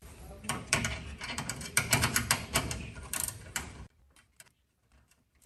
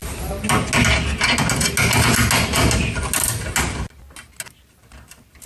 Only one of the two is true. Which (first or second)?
second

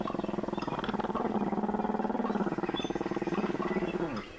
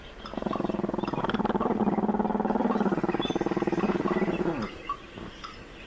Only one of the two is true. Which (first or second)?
first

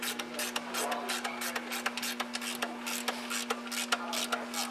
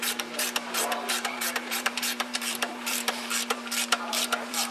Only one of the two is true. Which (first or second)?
first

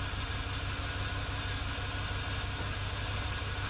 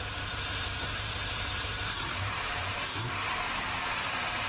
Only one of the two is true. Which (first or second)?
first